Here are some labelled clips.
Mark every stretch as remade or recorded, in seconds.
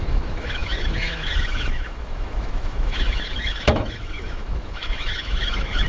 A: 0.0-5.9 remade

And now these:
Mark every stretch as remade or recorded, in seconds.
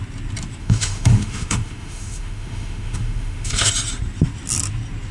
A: 0.0-0.6 recorded; 0.6-3.7 remade; 3.7-5.1 recorded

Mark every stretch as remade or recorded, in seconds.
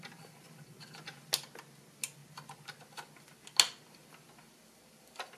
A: 0.0-5.4 recorded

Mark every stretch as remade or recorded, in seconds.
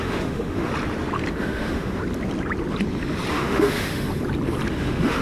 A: 0.0-0.7 remade; 0.7-1.3 recorded; 1.3-2.0 remade; 2.0-3.3 recorded; 3.3-4.1 remade; 4.1-4.7 recorded; 4.7-5.2 remade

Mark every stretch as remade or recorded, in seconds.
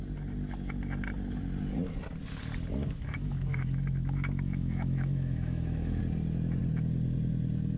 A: 0.0-2.8 recorded; 2.8-6.0 remade; 6.0-7.8 recorded